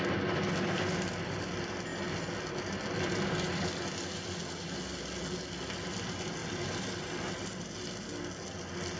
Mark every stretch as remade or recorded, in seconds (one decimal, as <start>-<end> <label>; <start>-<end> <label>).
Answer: 0.0-9.0 recorded